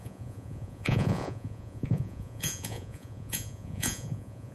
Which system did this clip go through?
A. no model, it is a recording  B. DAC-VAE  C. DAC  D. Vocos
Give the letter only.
D